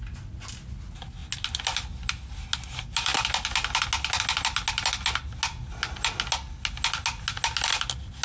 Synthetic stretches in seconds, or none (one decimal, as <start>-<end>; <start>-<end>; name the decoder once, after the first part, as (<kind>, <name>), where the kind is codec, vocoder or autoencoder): none